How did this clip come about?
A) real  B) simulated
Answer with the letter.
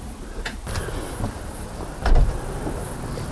A